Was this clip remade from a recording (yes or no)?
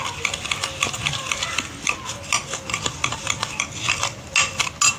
no